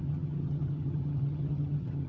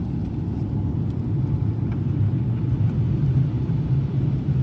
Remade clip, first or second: first